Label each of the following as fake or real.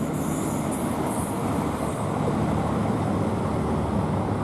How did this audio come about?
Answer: real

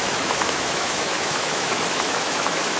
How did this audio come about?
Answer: fake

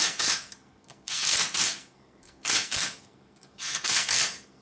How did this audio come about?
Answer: fake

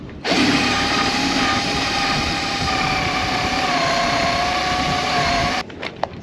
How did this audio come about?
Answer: fake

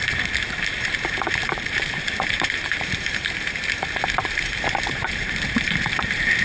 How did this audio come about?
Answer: fake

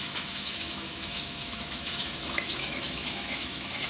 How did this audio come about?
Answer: fake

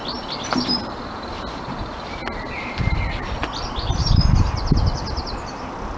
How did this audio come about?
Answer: real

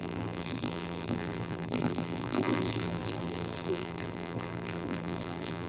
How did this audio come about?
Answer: fake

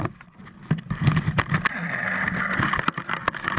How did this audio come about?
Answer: real